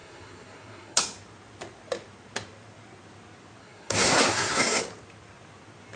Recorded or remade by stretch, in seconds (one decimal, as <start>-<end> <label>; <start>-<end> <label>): 0.0-1.0 remade; 1.0-3.6 recorded; 3.6-4.8 remade; 4.8-6.0 recorded